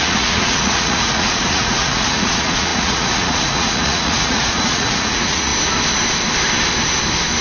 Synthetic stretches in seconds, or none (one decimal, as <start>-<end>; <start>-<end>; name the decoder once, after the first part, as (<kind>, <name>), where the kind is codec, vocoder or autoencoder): 0.0-5.5 (vocoder, Vocos)